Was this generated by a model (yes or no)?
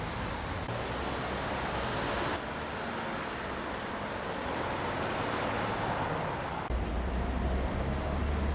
no